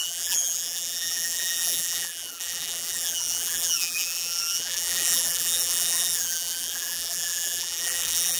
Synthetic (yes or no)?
yes